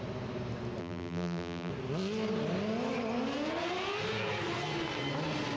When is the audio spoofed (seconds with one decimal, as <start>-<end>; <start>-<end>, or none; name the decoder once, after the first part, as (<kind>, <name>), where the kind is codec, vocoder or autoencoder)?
0.8-1.7 (vocoder, BigVGAN v2)